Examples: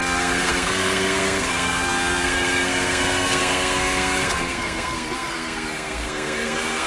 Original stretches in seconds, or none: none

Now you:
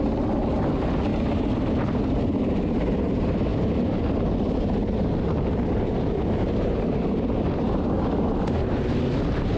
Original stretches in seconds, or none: 0.0-9.6

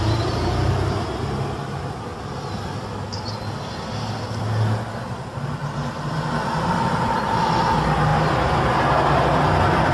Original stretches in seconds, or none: 2.1-4.4; 5.6-6.7; 8.1-8.6